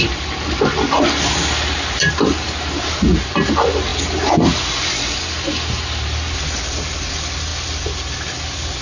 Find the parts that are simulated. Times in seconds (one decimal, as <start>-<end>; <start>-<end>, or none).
none